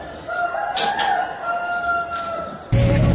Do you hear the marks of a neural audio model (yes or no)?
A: no